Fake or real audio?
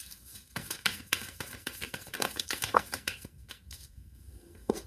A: fake